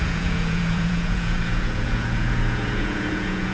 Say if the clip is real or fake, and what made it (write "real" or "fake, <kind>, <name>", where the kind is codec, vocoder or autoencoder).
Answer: fake, vocoder, Vocos